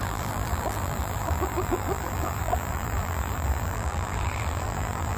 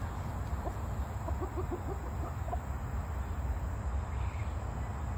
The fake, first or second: first